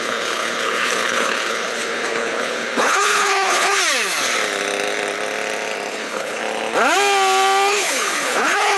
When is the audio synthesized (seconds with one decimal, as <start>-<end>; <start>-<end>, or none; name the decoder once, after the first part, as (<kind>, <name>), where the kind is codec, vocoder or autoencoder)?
0.0-3.8 (codec, HILCodec); 5.9-6.4; 7.7-8.8